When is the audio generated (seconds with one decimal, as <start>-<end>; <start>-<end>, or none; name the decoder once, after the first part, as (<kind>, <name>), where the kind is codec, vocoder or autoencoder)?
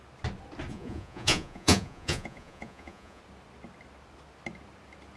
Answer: 0.7-3.2 (vocoder, Vocos)